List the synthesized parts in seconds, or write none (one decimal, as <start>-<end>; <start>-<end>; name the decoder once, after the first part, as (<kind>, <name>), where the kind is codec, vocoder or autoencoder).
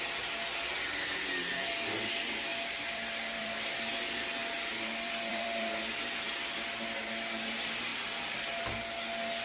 2.5-3.9 (vocoder, BigVGAN v2); 4.4-6.3; 7.9-8.8